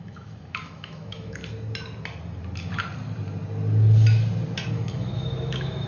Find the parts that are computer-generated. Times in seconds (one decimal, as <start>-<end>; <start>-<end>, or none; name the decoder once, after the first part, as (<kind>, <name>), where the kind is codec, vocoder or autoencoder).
0.0-1.4 (autoencoder, DAC-VAE); 4.7-5.9